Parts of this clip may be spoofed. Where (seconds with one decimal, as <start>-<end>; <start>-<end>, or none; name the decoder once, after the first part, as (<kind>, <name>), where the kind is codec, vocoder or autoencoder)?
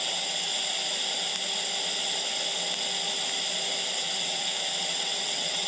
0.0-0.5 (vocoder, WaveNeXt); 3.9-5.7